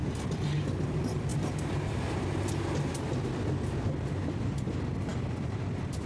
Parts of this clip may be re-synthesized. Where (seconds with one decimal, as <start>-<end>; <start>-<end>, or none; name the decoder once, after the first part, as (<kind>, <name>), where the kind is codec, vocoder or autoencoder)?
none